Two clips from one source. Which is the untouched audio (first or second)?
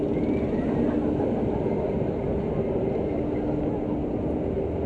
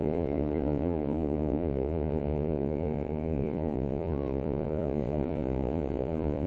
first